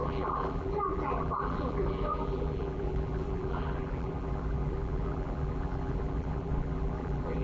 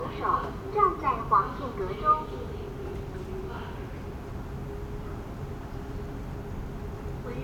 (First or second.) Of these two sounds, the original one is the second